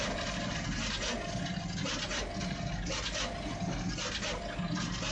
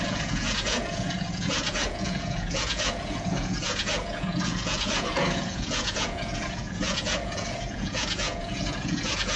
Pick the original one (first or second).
first